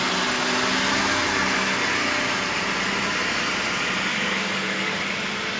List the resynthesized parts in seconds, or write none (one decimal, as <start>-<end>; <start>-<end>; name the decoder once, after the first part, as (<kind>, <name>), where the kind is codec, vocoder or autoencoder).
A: 4.1-5.0 (codec, DAC)